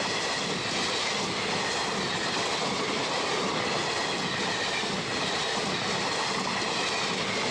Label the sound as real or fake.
real